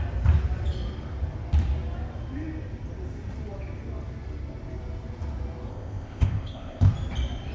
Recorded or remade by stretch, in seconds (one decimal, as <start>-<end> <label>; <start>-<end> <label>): 0.0-5.7 recorded; 5.7-6.9 remade; 6.9-7.5 recorded